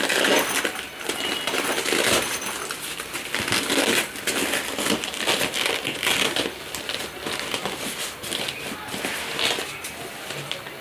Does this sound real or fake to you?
real